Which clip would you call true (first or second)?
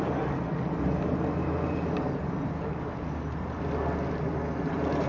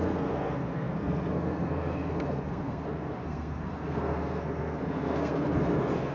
first